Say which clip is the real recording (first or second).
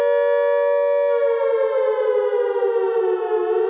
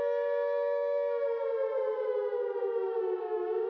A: first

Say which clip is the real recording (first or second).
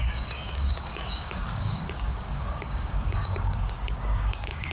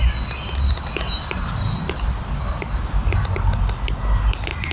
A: second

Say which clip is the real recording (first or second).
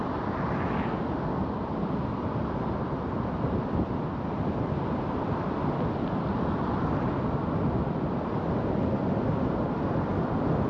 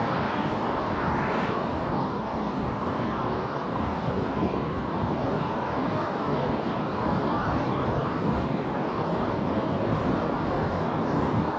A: first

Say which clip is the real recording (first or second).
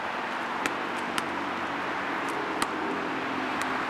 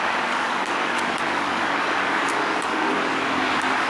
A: first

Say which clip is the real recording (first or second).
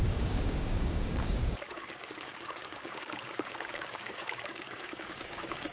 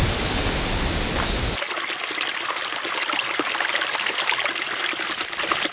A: second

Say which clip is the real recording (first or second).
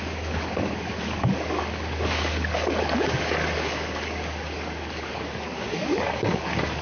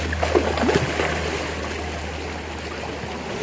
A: second